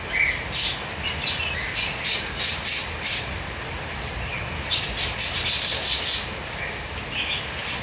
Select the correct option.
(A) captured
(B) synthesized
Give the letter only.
A